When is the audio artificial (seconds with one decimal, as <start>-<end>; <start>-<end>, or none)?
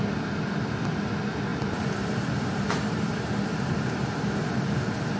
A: 1.5-4.6